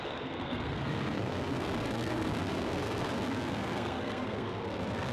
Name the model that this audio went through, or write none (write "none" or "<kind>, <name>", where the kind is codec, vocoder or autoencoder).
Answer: codec, SNAC